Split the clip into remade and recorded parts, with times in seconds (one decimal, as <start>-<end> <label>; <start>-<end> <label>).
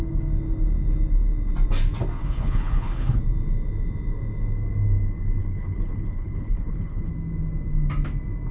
0.0-2.2 recorded; 2.2-3.2 remade; 3.2-5.4 recorded; 5.4-7.1 remade; 7.1-8.5 recorded